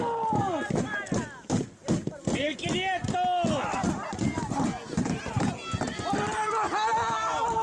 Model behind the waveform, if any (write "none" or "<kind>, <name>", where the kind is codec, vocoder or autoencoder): none